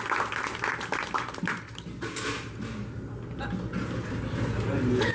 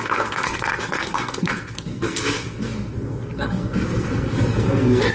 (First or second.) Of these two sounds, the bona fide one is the first